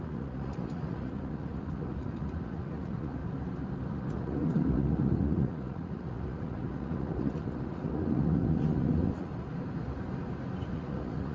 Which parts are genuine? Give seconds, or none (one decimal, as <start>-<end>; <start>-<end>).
3.2-3.9; 9.3-10.7